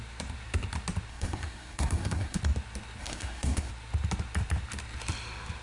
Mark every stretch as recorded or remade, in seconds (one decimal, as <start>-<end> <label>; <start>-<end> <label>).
0.0-1.1 recorded; 1.1-2.4 remade; 2.4-3.0 recorded; 3.0-3.7 remade; 3.7-5.6 recorded